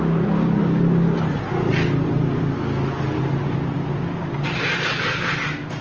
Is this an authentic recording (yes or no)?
yes